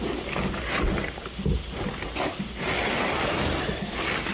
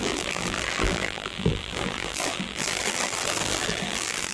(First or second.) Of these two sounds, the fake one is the second